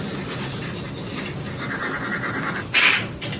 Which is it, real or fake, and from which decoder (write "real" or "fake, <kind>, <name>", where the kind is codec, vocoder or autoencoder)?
real